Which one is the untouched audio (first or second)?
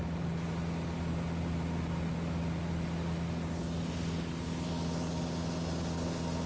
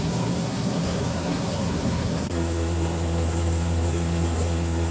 first